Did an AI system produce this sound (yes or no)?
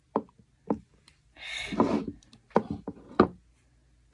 no